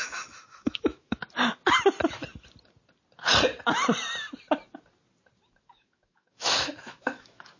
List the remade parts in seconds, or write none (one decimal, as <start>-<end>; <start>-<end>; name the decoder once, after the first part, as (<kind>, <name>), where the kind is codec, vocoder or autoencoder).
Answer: 0.0-1.2 (autoencoder, DAC-VAE); 5.6-7.6